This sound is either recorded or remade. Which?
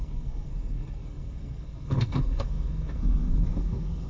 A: remade